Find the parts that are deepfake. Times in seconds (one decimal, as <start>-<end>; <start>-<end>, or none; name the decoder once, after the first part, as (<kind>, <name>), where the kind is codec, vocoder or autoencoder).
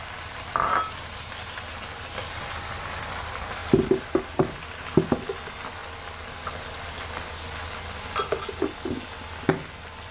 none